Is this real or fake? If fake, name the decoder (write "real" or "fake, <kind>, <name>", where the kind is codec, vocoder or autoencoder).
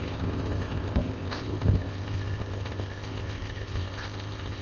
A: fake, codec, ZipCodec